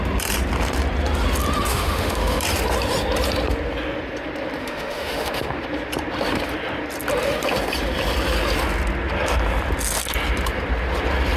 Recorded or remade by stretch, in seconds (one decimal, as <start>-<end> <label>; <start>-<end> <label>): 0.0-1.7 recorded; 1.7-2.4 remade; 2.4-4.6 recorded; 4.6-5.6 remade; 5.6-11.4 recorded